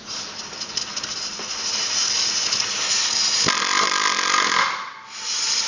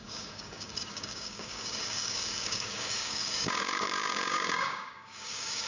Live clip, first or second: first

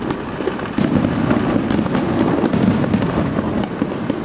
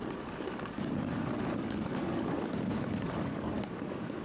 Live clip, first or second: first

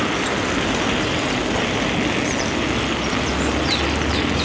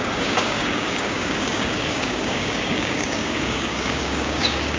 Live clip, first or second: first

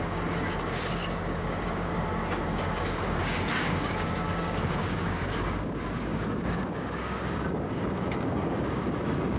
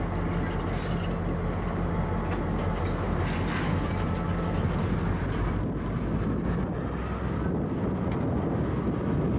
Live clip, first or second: second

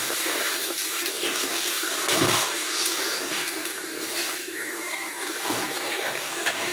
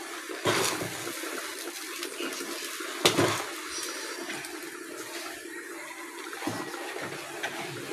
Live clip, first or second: second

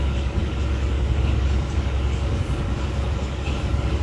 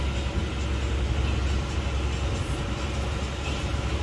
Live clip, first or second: second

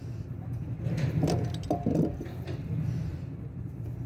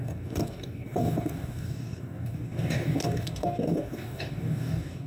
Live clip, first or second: first